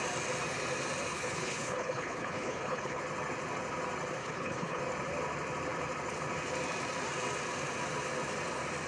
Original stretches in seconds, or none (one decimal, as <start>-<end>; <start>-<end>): 0.0-1.1; 3.0-4.2; 4.8-8.9